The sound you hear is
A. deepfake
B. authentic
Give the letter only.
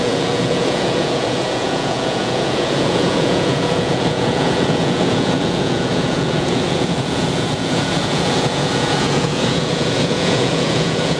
A